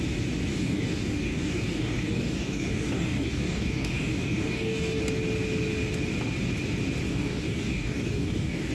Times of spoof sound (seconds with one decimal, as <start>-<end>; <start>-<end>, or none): 0.5-5.0; 7.1-8.7